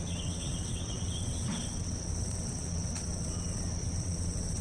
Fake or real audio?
fake